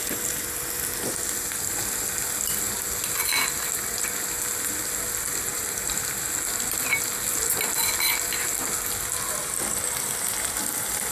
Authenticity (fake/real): real